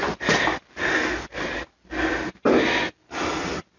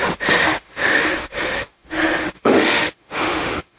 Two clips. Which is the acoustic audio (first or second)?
first